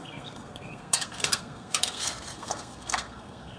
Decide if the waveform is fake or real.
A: fake